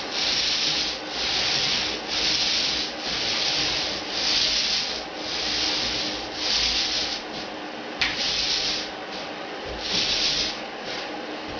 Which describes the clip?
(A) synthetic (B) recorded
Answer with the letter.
B